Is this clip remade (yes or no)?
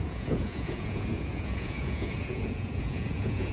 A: yes